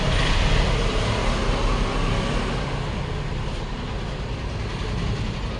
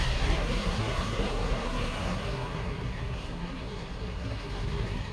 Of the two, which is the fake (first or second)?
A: second